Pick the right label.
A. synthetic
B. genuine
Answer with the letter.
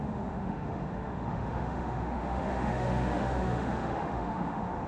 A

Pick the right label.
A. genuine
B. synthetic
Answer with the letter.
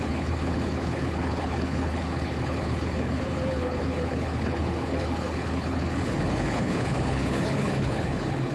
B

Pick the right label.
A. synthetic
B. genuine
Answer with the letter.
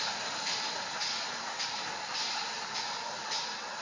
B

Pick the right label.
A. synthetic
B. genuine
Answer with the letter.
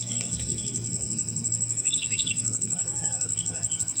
A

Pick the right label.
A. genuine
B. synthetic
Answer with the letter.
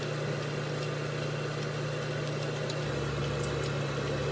A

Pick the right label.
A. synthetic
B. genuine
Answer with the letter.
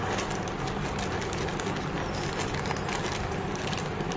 B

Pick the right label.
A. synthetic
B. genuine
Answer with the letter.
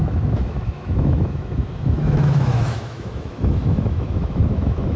A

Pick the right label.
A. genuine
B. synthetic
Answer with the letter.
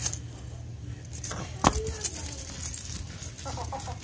A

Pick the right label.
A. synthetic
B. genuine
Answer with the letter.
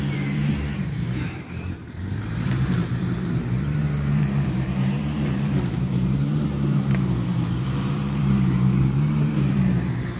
A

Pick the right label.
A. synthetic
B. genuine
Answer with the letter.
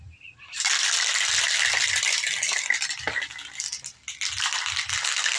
B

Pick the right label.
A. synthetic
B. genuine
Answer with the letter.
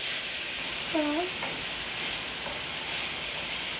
B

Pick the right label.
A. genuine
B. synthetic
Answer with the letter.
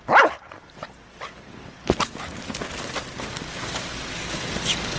A